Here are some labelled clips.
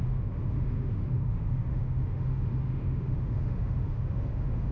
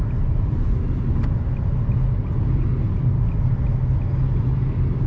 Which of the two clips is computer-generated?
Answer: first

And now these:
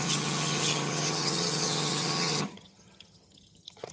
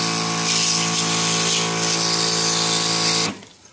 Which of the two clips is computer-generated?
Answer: first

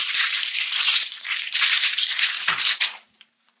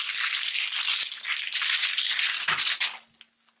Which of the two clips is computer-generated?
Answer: first